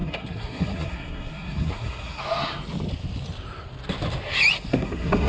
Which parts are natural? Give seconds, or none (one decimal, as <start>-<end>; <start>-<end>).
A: 2.2-4.7